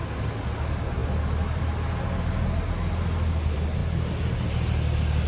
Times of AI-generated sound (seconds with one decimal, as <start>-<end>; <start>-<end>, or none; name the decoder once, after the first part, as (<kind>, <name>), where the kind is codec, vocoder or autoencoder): none